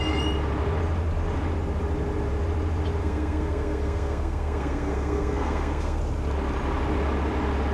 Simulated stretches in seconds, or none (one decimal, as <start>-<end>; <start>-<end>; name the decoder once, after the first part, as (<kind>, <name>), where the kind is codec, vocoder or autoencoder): 3.0-6.0 (codec, SNAC)